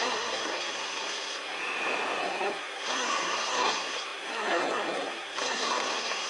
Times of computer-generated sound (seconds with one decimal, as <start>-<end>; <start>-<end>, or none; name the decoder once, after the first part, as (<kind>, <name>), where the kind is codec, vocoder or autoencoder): 0.0-1.6 (codec, SNAC); 2.2-6.3